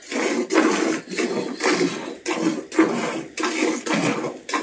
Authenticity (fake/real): real